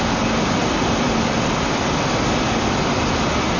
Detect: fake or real real